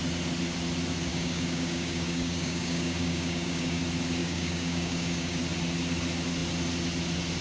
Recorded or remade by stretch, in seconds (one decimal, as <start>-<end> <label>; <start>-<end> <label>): 0.0-1.1 recorded; 1.1-3.8 remade; 3.8-4.2 recorded; 4.2-5.4 remade; 5.4-7.4 recorded